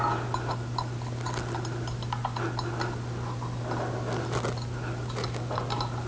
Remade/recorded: recorded